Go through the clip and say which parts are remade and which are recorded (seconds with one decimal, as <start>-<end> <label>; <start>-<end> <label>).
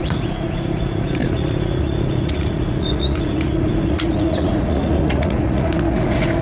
0.0-6.4 remade